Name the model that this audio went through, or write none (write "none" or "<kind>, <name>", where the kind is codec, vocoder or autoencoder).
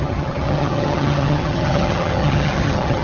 vocoder, HiFi-GAN